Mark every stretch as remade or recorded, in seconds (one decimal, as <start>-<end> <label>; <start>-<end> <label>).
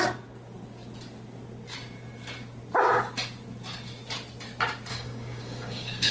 0.0-4.9 recorded; 4.9-6.1 remade